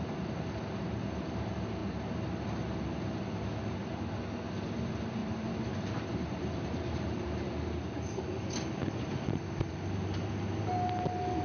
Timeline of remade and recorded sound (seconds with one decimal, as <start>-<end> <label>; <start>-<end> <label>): 0.0-5.2 recorded; 5.2-8.3 remade; 8.3-9.7 recorded; 9.7-10.7 remade; 10.7-11.4 recorded